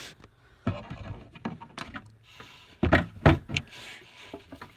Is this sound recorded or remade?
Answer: recorded